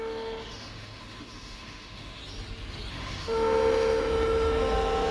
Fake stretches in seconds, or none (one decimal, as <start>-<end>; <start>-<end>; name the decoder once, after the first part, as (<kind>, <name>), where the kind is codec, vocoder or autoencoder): 0.0-2.2 (autoencoder, DAC-VAE); 2.9-5.1